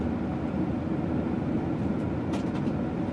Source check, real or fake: real